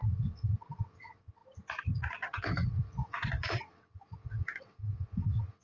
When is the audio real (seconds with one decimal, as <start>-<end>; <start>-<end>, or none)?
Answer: 1.4-2.1